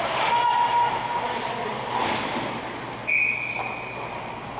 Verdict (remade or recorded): recorded